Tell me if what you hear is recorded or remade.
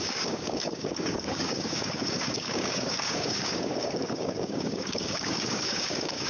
remade